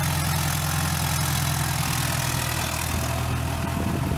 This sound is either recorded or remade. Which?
recorded